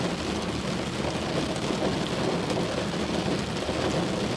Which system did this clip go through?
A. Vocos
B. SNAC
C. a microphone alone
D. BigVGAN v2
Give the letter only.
C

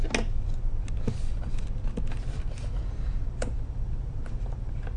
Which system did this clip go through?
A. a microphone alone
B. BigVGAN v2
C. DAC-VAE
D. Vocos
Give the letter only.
A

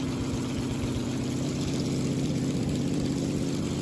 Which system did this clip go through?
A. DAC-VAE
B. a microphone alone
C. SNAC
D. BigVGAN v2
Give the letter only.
D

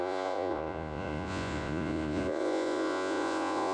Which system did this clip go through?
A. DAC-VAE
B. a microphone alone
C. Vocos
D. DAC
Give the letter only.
C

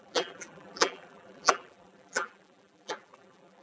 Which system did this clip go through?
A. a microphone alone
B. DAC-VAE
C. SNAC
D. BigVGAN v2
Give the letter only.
D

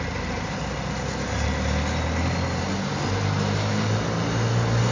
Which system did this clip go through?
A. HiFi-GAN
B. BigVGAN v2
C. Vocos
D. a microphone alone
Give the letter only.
D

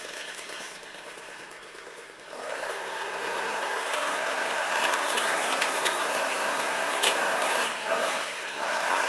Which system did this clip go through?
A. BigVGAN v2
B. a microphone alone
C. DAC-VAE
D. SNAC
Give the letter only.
D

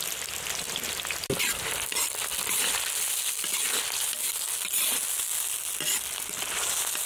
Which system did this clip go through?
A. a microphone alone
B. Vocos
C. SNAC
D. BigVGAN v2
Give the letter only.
A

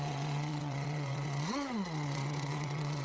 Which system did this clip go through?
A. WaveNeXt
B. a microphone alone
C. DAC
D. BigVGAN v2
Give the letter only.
A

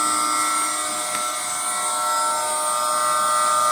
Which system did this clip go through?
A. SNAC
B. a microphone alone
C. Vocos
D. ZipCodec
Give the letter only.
B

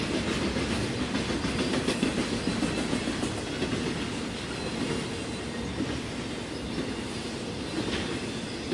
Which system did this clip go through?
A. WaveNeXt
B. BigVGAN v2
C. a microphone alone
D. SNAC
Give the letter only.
C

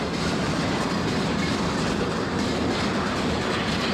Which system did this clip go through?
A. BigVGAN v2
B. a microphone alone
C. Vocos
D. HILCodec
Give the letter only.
B